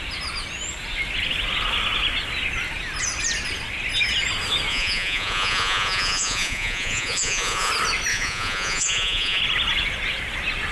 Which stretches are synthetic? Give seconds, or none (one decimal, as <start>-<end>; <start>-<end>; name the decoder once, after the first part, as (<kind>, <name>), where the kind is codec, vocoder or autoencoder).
4.7-7.7 (vocoder, Vocos); 8.1-9.4